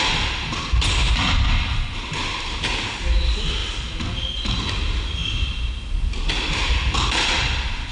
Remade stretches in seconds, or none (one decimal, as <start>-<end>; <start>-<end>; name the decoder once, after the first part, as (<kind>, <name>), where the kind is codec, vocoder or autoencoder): none